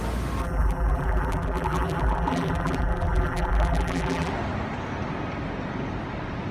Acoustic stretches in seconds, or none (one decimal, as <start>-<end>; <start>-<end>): 0.0-0.4; 4.3-6.5